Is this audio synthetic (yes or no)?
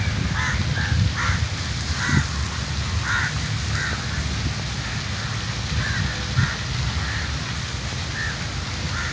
no